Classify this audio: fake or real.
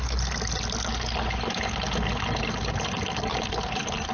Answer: real